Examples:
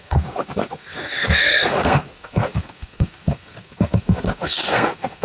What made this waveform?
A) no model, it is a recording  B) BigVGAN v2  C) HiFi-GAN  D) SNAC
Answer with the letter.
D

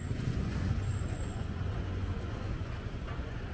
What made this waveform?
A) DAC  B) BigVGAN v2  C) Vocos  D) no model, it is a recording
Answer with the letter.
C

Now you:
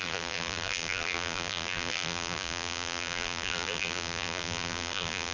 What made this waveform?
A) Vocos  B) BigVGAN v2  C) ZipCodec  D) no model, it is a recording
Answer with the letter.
B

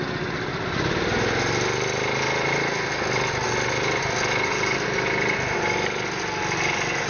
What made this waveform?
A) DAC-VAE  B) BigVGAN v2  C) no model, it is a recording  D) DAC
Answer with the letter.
C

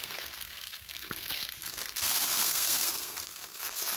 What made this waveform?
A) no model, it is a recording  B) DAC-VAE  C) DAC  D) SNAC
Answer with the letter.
D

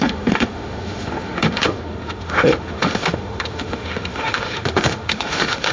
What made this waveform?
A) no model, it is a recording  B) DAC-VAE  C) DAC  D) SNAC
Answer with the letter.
B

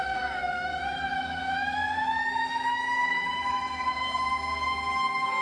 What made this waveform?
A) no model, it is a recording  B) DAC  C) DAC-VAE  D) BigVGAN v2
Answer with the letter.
C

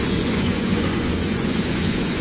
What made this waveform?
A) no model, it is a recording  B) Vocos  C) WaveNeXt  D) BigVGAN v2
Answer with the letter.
B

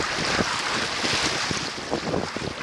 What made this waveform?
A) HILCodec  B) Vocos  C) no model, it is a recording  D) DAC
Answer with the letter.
C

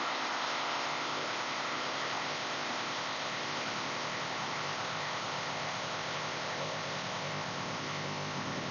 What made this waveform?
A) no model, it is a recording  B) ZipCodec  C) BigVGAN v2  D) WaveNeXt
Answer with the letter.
B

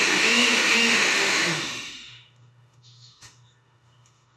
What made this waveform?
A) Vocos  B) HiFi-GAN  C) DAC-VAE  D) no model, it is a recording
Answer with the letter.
C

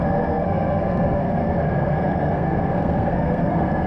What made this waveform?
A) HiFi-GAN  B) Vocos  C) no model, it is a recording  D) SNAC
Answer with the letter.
D